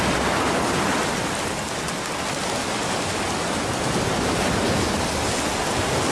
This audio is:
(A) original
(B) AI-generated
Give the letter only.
A